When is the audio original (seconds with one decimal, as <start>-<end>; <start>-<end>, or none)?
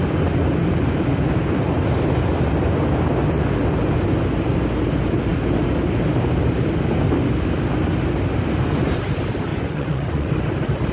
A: 0.0-9.5; 10.3-10.9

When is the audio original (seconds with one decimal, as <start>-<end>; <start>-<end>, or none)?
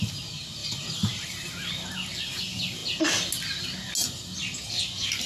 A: 0.0-0.6; 1.5-5.3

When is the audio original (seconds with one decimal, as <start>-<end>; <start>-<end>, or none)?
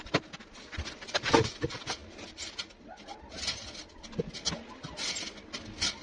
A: 0.0-6.0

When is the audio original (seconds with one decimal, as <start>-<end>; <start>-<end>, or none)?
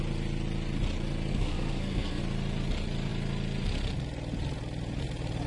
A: 0.0-1.3; 2.2-5.5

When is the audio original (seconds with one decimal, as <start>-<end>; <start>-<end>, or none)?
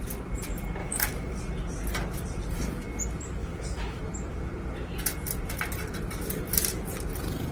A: 0.0-0.8; 1.4-3.4; 4.0-7.5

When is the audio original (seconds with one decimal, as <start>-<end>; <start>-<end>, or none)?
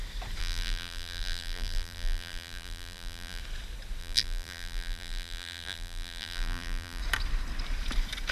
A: 0.0-0.4; 3.4-4.0; 7.0-8.3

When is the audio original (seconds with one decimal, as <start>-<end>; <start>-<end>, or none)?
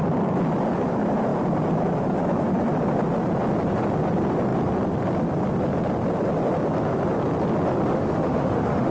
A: 0.0-7.9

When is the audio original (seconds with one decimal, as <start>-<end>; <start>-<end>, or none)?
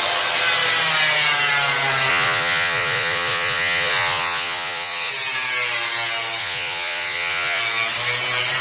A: 0.0-2.1; 5.1-6.4; 7.6-8.6